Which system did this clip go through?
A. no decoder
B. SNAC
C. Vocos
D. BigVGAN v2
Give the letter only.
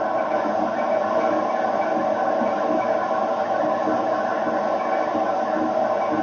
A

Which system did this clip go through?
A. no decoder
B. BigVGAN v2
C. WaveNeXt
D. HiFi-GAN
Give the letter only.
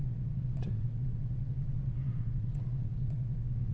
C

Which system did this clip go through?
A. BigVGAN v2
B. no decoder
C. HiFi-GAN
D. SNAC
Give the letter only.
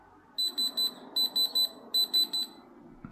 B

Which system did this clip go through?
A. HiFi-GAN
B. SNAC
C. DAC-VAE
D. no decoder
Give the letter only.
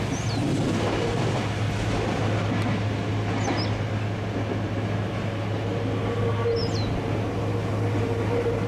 D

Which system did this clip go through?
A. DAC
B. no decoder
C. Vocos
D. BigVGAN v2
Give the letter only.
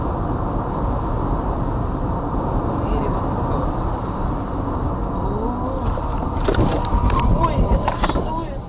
B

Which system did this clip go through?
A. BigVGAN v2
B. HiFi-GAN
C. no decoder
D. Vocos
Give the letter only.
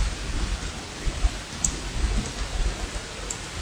C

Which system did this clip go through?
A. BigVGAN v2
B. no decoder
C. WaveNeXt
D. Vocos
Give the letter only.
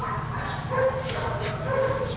B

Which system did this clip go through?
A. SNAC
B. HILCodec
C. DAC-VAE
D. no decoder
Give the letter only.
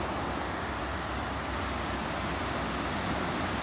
D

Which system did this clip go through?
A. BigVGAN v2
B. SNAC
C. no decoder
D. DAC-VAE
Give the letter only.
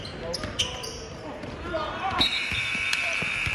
A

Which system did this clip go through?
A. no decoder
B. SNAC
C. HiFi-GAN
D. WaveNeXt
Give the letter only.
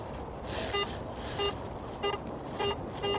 A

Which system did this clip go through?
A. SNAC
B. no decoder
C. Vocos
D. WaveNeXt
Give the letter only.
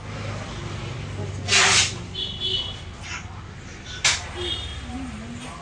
B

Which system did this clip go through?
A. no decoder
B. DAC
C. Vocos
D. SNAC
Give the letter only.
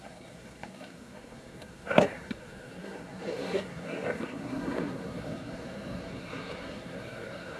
D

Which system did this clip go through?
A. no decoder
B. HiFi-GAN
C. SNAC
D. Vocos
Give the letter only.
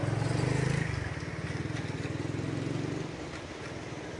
A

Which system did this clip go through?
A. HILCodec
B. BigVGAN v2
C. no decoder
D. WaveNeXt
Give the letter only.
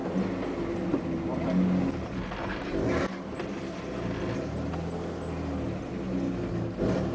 C